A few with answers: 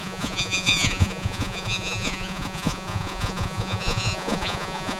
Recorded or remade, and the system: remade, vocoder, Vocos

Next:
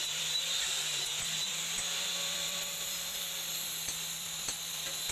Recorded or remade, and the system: remade, vocoder, BigVGAN v2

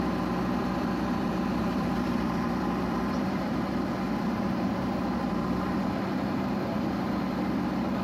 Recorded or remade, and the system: remade, vocoder, BigVGAN v2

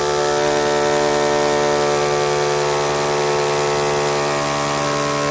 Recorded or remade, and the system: recorded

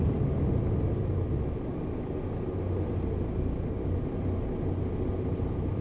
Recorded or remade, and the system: recorded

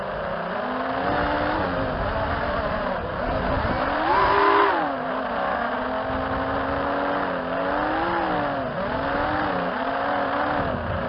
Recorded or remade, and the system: recorded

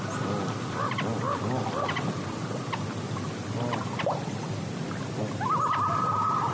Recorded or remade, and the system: recorded